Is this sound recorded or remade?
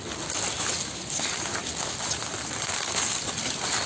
recorded